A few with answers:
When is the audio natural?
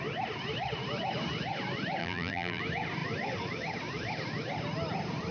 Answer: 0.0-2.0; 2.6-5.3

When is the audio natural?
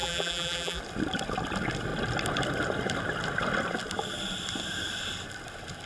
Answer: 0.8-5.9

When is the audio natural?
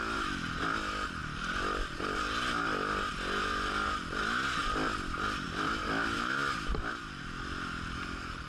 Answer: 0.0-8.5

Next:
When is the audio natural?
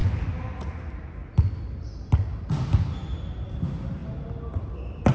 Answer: 0.0-5.1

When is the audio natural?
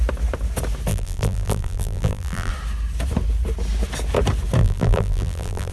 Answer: 0.0-0.9; 2.5-4.6